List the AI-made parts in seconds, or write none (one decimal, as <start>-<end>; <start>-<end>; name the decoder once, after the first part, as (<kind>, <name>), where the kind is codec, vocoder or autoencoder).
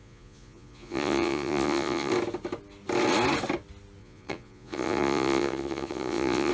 0.0-2.1 (vocoder, Vocos); 4.0-6.5